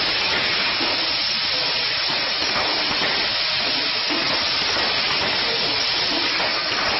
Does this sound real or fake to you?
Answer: real